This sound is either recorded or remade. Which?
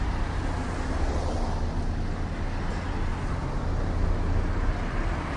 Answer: recorded